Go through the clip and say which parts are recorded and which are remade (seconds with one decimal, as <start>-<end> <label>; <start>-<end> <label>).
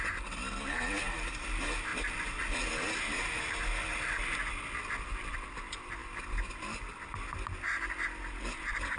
0.0-9.0 recorded